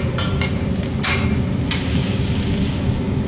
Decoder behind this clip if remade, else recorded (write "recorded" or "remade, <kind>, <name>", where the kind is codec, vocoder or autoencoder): recorded